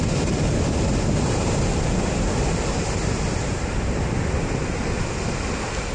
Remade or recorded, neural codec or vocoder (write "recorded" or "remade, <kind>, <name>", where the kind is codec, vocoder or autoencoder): recorded